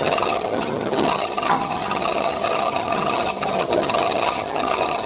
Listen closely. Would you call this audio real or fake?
fake